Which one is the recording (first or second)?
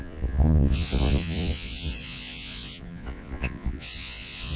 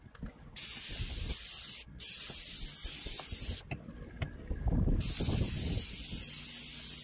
second